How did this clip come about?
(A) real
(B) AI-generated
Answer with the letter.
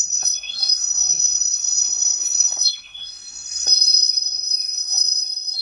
B